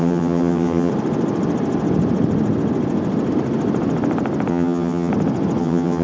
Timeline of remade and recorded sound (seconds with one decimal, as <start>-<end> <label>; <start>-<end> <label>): 0.0-0.9 remade; 0.9-4.5 recorded; 4.5-5.1 remade; 5.1-5.6 recorded; 5.6-6.0 remade